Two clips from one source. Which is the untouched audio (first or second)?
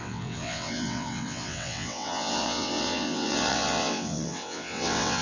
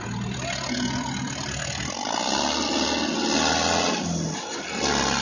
second